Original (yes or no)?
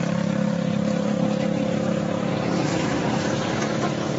yes